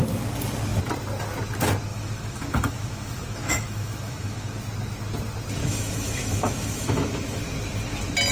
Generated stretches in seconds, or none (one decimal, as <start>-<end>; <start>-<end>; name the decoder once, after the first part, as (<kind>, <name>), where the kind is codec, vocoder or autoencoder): 1.9-4.6 (autoencoder, DAC-VAE); 5.6-7.4